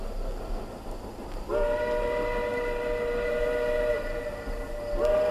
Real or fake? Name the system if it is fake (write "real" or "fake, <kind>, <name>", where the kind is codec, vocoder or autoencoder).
real